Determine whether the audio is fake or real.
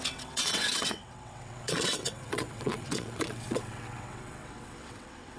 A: fake